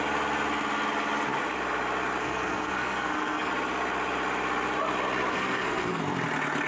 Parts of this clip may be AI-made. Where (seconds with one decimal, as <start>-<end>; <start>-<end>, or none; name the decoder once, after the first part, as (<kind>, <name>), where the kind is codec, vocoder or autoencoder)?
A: 2.2-3.5 (codec, SNAC); 5.3-6.0